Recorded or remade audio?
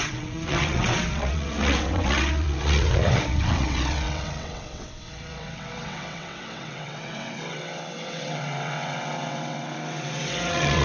remade